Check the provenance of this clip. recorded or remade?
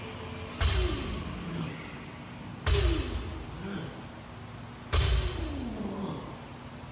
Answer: recorded